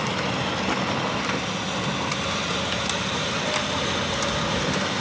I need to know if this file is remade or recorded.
recorded